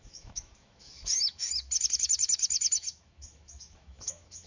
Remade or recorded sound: remade